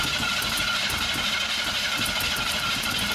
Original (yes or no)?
no